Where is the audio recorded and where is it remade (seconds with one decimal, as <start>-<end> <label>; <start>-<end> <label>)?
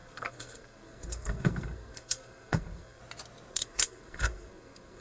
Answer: 0.0-3.0 remade; 3.0-3.5 recorded; 3.5-5.0 remade